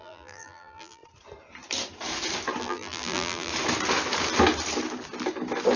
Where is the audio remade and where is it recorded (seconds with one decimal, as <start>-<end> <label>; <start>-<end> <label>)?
0.0-1.0 remade; 1.0-2.6 recorded; 2.6-3.5 remade; 3.5-5.8 recorded